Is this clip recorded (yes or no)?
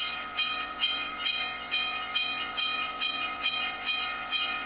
no